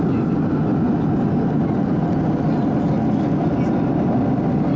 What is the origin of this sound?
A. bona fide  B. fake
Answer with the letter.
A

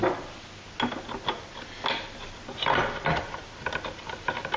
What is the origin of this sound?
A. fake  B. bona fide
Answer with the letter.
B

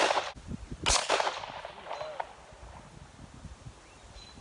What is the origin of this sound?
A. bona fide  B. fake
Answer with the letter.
A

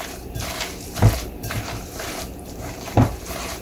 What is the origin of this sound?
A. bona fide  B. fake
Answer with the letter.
B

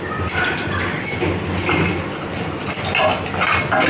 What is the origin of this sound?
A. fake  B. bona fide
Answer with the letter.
B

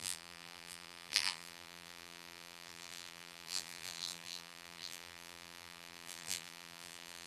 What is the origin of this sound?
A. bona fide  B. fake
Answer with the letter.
B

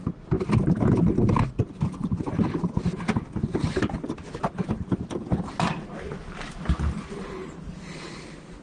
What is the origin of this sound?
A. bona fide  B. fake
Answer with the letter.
A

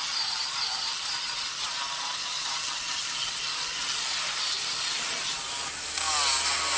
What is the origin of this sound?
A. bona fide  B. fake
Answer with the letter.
A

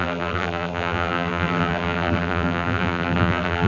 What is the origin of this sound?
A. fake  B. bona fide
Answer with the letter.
A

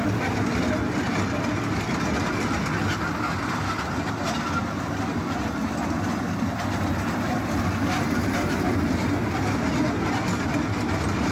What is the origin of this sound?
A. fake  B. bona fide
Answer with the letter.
B